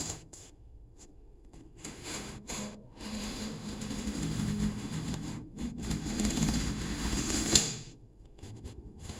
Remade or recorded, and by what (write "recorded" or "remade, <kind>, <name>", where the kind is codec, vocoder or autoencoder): remade, autoencoder, DAC-VAE